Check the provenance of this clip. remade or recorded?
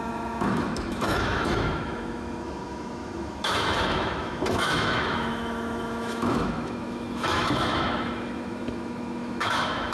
remade